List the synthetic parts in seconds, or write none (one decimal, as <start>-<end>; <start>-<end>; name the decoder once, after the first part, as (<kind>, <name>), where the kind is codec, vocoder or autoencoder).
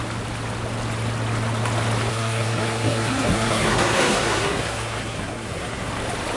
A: 2.1-5.9 (codec, SNAC)